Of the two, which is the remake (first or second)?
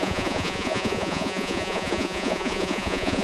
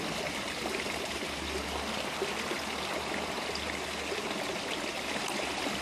first